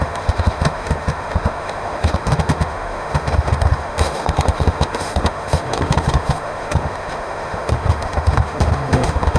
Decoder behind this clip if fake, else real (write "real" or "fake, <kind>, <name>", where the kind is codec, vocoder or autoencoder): fake, autoencoder, DAC-VAE